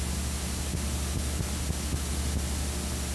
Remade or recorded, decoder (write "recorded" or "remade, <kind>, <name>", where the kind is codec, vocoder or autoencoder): recorded